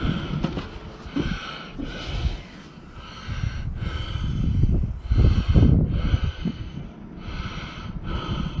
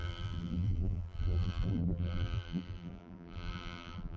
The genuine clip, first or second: first